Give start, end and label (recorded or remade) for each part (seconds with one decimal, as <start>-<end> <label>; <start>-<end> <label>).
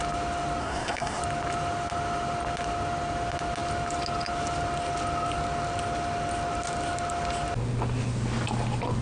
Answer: 0.0-0.6 recorded; 0.6-1.2 remade; 1.2-9.0 recorded